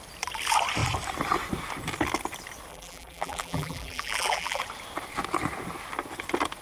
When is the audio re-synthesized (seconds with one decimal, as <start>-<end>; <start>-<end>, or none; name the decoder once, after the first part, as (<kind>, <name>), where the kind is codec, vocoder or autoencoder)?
2.7-4.6 (vocoder, BigVGAN v2)